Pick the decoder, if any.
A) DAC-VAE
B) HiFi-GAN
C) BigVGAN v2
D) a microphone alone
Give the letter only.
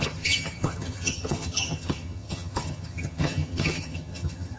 B